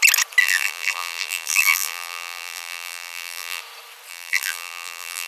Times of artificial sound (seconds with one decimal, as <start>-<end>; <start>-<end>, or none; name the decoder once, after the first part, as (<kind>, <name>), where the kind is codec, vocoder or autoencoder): 0.4-3.6 (vocoder, BigVGAN v2); 4.1-5.3